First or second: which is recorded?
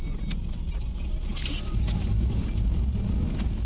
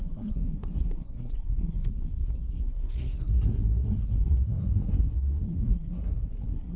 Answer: first